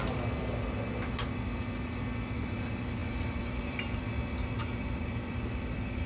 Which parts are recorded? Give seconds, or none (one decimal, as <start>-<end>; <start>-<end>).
0.0-3.0; 4.0-4.6